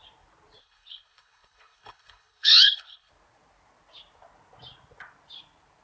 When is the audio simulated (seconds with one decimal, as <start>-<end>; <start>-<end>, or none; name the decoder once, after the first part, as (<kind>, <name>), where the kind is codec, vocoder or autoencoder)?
0.6-3.1 (codec, HILCodec)